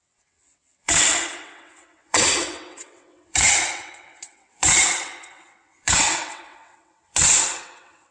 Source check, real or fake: fake